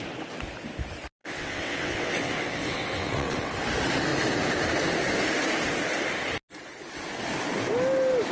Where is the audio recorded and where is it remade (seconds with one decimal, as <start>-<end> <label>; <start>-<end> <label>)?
0.0-1.2 recorded; 1.2-3.5 remade; 3.5-8.3 recorded

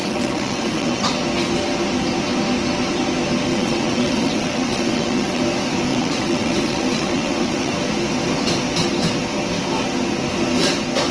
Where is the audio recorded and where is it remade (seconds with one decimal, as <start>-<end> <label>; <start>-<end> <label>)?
0.0-1.1 remade; 1.1-3.5 recorded; 3.5-5.4 remade; 5.4-5.9 recorded; 5.9-7.7 remade; 7.7-11.1 recorded

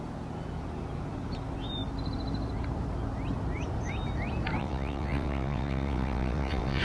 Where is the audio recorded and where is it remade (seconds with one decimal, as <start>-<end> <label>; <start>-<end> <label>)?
0.0-4.6 recorded; 4.6-6.8 remade